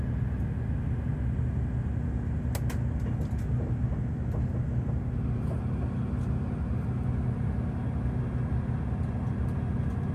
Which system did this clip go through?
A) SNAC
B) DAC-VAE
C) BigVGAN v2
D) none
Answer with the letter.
D